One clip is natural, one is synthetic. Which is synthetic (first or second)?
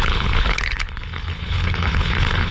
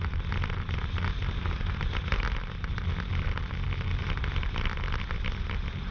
first